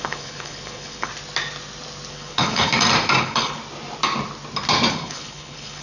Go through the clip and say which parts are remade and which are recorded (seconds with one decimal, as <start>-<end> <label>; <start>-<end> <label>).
0.0-1.1 remade; 1.1-2.1 recorded; 2.1-2.7 remade; 2.7-3.2 recorded; 3.2-3.6 remade; 3.6-4.9 recorded; 4.9-5.8 remade